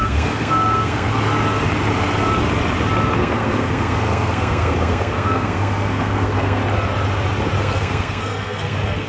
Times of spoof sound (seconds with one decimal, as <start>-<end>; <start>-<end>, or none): 0.0-1.1; 3.2-6.6; 7.6-9.1